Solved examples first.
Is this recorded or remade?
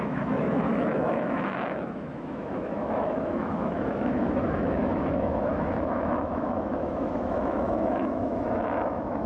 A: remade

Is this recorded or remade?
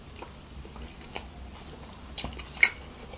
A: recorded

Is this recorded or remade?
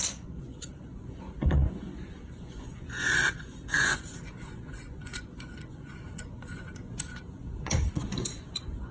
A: remade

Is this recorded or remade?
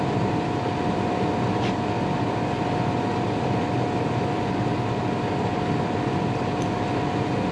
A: recorded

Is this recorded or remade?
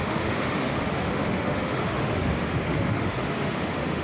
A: remade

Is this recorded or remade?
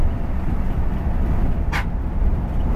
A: recorded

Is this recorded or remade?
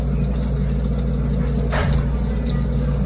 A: recorded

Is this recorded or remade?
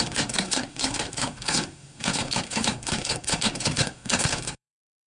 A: remade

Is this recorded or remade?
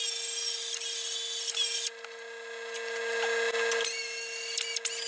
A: recorded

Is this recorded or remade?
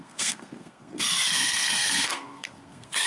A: remade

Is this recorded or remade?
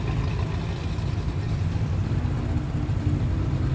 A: recorded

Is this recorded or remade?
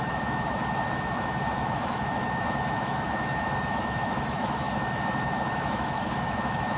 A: remade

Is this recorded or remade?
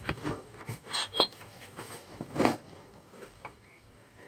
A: remade